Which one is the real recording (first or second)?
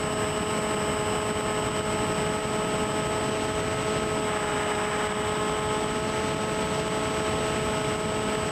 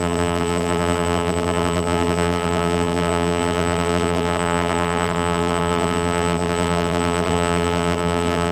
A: first